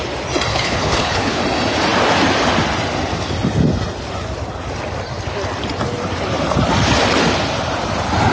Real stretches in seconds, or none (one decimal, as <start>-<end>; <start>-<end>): 0.0-0.5; 1.4-8.3